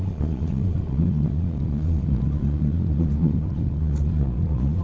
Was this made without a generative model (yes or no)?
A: no